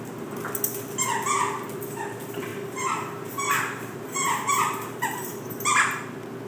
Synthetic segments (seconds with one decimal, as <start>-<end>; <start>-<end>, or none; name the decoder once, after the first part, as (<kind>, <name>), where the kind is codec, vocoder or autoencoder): 2.5-5.5 (vocoder, BigVGAN v2)